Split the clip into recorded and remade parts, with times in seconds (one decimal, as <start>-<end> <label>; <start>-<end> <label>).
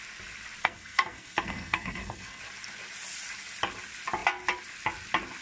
0.0-0.6 recorded; 0.6-2.4 remade; 2.4-5.4 recorded